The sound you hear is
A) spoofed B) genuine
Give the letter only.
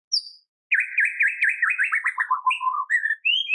B